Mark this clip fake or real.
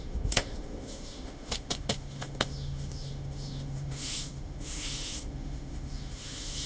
fake